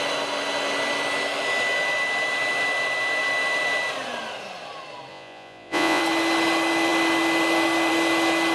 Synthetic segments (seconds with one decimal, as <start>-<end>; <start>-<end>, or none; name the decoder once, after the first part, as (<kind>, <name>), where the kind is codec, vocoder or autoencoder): 5.1-6.0 (vocoder, Vocos)